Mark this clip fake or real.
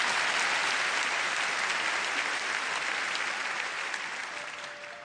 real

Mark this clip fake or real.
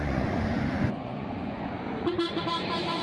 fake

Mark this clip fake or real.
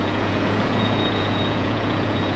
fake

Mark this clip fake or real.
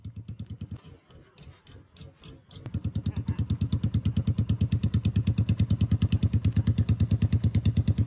real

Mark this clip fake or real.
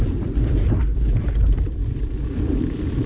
fake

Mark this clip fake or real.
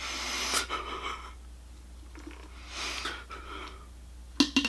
real